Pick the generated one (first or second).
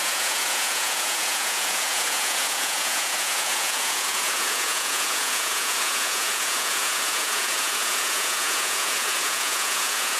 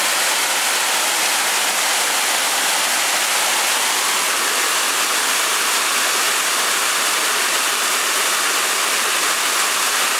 first